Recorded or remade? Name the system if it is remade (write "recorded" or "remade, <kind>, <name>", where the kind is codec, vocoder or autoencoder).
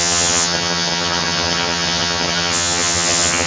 remade, vocoder, HiFi-GAN